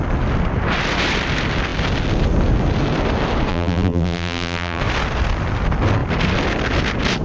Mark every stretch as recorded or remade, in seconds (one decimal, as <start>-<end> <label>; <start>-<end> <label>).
0.0-3.5 recorded; 3.5-4.8 remade; 4.8-7.2 recorded